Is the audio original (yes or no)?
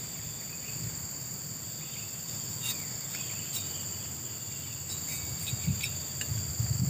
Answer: yes